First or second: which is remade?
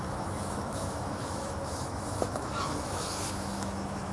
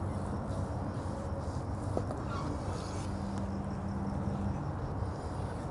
first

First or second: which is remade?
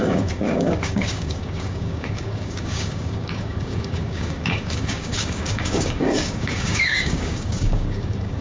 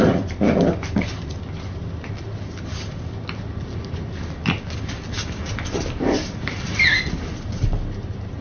first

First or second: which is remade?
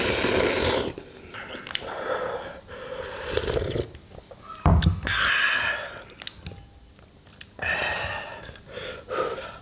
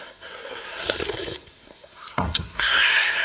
second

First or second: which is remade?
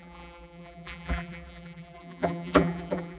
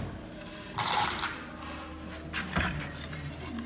first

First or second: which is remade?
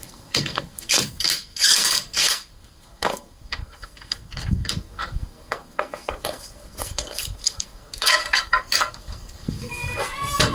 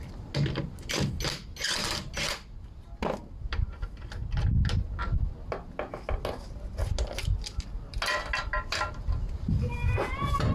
first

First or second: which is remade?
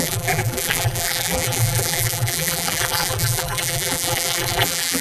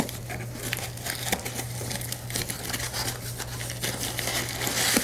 first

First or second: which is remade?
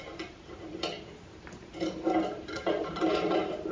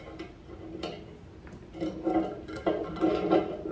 first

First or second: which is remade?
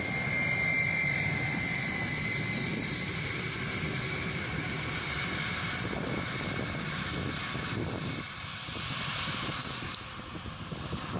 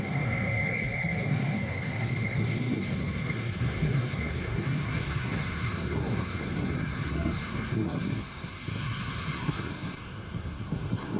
second